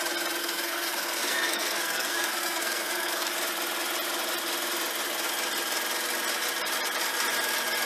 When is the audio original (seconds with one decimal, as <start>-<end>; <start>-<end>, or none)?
0.0-0.4; 3.3-7.9